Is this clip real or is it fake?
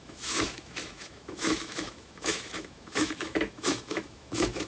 fake